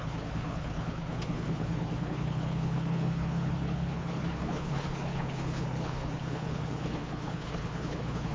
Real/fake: fake